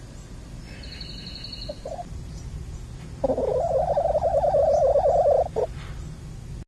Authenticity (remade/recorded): recorded